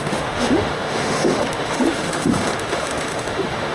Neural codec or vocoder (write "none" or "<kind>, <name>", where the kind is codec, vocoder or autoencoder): autoencoder, DAC-VAE